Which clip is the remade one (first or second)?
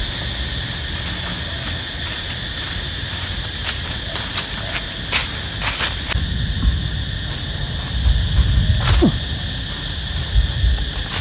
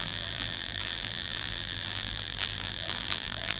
second